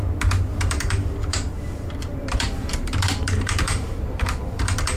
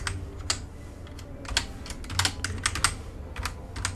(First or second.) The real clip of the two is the second